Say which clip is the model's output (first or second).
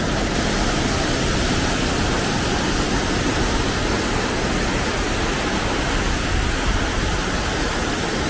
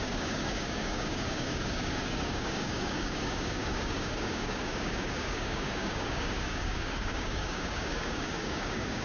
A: second